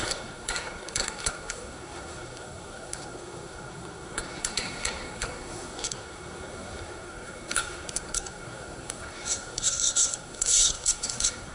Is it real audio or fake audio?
fake